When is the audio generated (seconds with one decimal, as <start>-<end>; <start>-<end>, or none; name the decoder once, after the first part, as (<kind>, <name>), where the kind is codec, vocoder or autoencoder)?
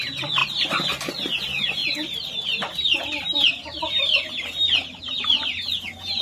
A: 0.4-0.9 (vocoder, BigVGAN v2); 1.8-5.0